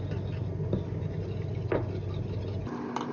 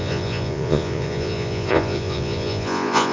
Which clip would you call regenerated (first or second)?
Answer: second